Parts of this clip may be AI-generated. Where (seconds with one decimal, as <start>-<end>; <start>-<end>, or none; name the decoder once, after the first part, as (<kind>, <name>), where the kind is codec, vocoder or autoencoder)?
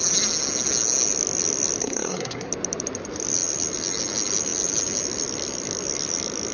1.8-2.5 (codec, SNAC)